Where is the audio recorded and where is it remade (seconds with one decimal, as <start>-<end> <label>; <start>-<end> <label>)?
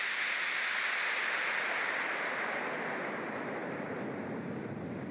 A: 0.0-3.6 recorded; 3.6-4.5 remade; 4.5-5.1 recorded